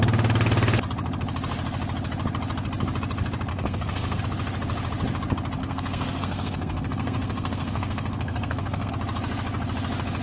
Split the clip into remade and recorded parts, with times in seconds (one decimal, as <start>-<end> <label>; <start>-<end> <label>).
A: 0.0-3.5 recorded; 3.5-4.2 remade; 4.2-5.6 recorded; 5.6-8.9 remade; 8.9-10.2 recorded